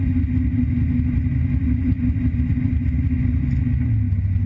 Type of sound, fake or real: real